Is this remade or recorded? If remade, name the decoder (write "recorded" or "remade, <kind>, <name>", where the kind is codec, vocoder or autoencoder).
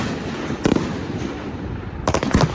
recorded